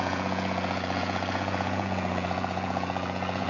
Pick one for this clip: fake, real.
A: fake